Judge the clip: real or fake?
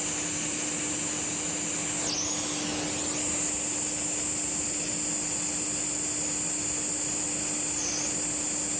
real